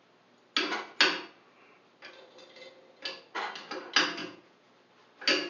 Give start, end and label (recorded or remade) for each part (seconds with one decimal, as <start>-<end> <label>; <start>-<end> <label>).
0.0-4.2 recorded; 4.2-4.7 remade; 4.7-5.5 recorded